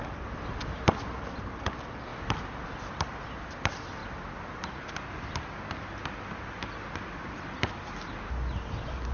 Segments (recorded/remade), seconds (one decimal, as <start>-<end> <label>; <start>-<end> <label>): 0.0-9.1 recorded